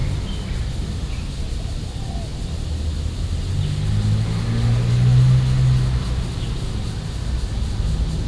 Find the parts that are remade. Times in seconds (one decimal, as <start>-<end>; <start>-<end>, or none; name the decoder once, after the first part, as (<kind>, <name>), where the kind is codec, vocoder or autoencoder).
none